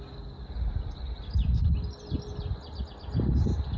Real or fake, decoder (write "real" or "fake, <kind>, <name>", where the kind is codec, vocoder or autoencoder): real